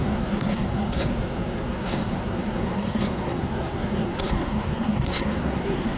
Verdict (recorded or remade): remade